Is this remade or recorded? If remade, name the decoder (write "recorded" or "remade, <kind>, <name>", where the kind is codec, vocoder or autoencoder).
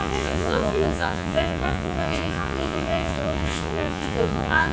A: remade, vocoder, Vocos